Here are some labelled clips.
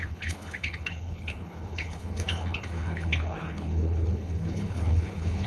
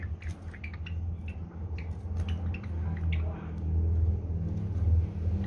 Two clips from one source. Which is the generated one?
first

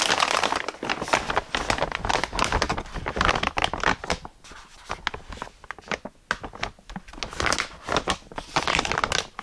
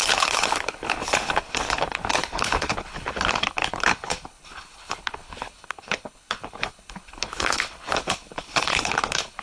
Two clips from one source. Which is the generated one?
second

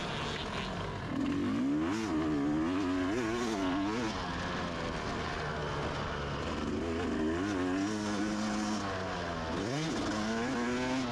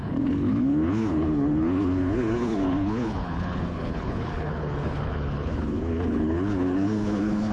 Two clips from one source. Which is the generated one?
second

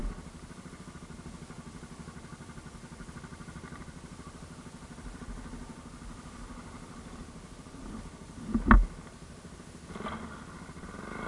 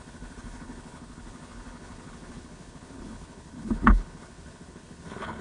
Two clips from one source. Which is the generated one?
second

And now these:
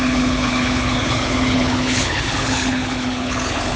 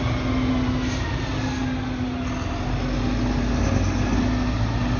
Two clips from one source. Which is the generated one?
first